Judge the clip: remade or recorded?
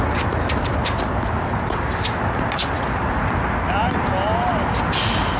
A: recorded